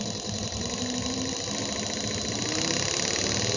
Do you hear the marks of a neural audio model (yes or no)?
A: no